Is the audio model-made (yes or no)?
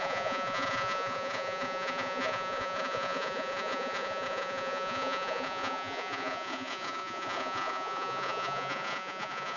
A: yes